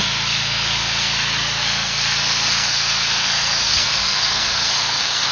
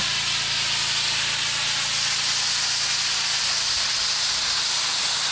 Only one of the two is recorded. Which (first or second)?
second